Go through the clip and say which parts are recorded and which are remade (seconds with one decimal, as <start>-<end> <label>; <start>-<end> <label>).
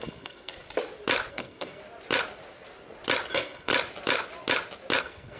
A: 0.0-0.5 remade; 0.5-1.3 recorded; 1.3-1.8 remade; 1.8-3.3 recorded; 3.3-3.7 remade; 3.7-5.0 recorded; 5.0-5.4 remade